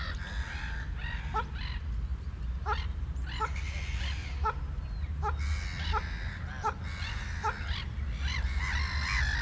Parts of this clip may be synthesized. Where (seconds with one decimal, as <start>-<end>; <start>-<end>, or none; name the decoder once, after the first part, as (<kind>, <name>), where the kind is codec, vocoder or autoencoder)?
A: none